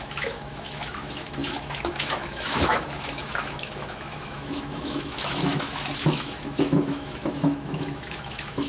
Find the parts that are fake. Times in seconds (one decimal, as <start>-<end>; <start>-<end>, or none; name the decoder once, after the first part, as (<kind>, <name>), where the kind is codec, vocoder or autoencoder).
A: 0.0-8.7 (autoencoder, DAC-VAE)